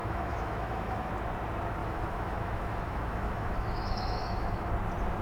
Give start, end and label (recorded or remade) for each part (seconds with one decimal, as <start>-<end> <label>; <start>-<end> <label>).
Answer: 0.0-1.1 remade; 1.1-1.8 recorded; 1.8-4.7 remade; 4.7-5.2 recorded